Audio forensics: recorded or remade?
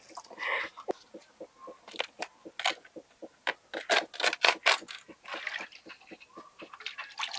recorded